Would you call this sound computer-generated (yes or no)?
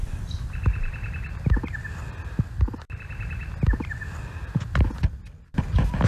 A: no